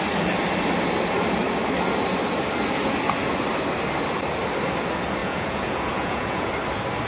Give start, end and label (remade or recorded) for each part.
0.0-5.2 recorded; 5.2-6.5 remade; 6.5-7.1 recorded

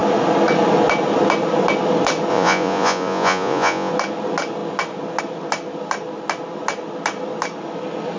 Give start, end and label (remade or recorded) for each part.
0.0-2.3 recorded; 2.3-3.9 remade; 3.9-8.2 recorded

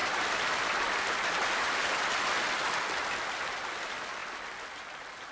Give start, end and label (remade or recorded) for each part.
0.0-5.3 recorded

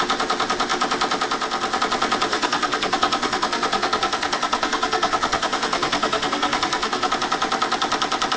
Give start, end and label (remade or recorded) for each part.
0.0-2.3 recorded; 2.3-7.1 remade; 7.1-8.4 recorded

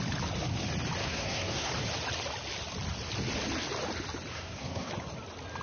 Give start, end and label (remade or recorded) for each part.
0.0-1.0 recorded; 1.0-1.7 remade; 1.7-4.3 recorded; 4.3-4.9 remade; 4.9-5.6 recorded

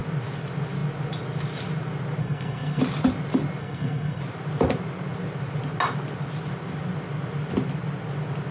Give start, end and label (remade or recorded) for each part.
0.0-2.2 recorded; 2.2-2.8 remade; 2.8-3.6 recorded; 3.6-4.2 remade; 4.2-8.5 recorded